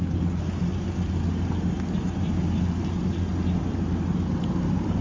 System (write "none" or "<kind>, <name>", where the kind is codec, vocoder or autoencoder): none